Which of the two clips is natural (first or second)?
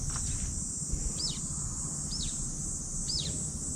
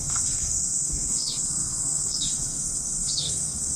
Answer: first